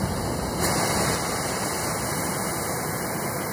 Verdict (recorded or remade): recorded